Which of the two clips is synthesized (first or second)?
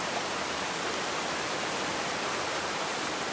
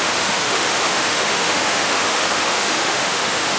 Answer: second